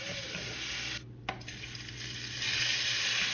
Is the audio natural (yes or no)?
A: yes